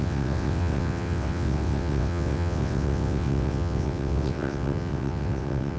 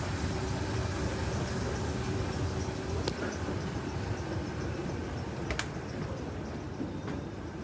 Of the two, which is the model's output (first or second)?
first